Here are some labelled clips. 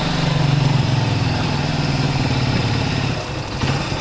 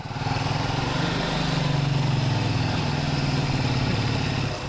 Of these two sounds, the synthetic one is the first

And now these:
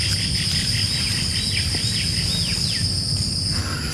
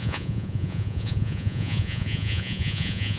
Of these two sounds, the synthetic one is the second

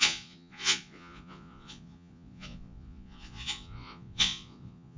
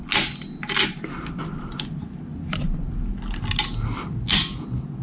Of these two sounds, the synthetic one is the first